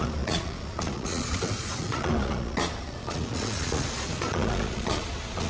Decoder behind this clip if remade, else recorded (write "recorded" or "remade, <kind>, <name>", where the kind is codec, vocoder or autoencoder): remade, vocoder, Vocos